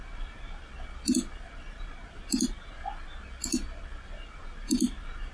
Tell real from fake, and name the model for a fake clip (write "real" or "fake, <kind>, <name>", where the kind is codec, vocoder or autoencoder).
real